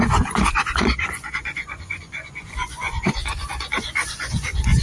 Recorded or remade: remade